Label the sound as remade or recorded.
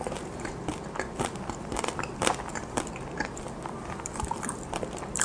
remade